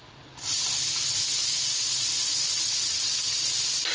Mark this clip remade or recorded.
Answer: recorded